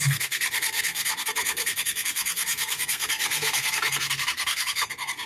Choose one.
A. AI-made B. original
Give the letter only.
A